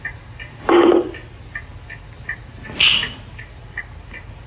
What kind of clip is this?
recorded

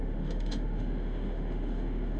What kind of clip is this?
remade